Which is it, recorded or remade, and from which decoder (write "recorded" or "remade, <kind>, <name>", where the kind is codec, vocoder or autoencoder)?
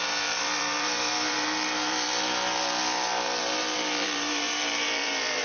remade, vocoder, BigVGAN v2